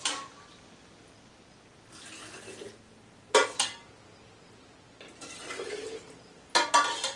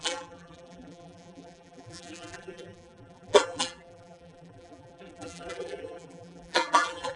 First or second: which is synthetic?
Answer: second